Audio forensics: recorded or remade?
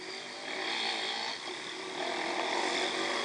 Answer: recorded